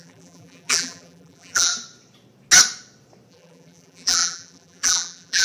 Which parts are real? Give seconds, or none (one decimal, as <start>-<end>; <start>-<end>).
1.7-3.3